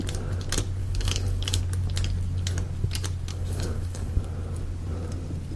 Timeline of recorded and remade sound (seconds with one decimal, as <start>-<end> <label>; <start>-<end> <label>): 0.0-0.8 recorded; 0.8-1.6 remade; 1.6-3.3 recorded; 3.3-4.2 remade; 4.2-5.6 recorded